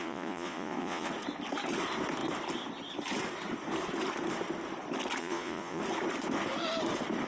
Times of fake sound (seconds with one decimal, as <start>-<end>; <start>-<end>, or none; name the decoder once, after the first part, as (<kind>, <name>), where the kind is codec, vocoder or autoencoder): 0.0-1.1 (vocoder, Vocos); 5.2-5.8